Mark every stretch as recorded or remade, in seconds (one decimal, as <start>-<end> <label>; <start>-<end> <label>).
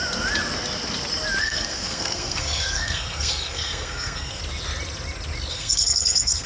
0.0-1.4 recorded; 1.4-4.4 remade; 4.4-5.5 recorded; 5.5-6.5 remade